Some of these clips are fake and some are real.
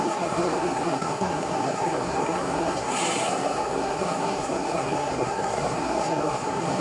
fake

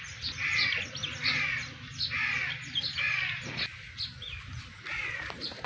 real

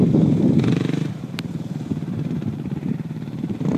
fake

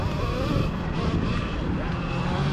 real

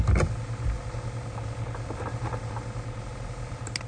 real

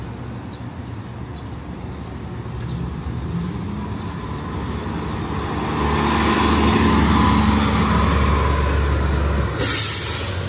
real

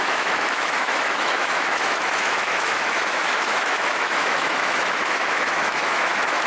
fake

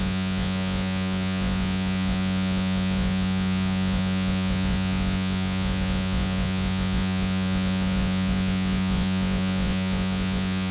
fake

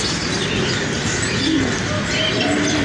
real